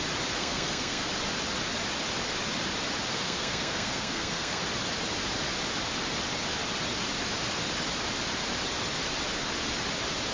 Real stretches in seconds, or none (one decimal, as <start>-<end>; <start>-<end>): 0.0-0.4; 1.1-3.1; 4.6-10.3